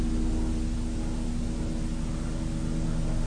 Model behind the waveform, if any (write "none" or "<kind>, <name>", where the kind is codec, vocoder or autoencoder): none